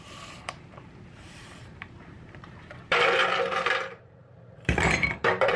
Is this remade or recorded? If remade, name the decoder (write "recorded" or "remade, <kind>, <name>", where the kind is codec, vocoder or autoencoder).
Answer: remade, vocoder, BigVGAN v2